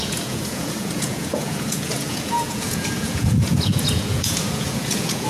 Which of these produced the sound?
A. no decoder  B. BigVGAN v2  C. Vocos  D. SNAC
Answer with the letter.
C